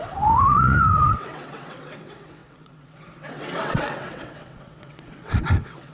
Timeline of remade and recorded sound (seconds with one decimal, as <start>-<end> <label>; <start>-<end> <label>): 0.0-5.9 remade